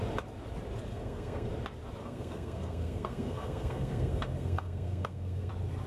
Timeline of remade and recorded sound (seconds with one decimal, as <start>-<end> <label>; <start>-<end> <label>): 0.0-0.9 recorded; 0.9-1.5 remade; 1.5-2.0 recorded; 2.0-5.5 remade; 5.5-5.9 recorded